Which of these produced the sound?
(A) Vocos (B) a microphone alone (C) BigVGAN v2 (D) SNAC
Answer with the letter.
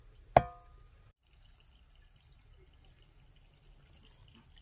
B